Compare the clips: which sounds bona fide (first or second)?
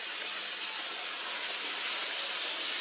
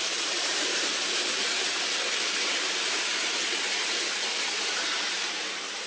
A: first